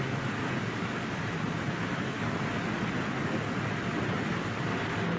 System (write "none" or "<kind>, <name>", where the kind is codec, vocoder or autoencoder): none